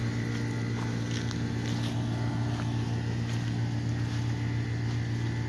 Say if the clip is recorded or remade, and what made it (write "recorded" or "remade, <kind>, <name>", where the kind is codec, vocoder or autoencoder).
recorded